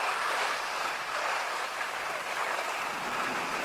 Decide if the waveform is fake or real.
fake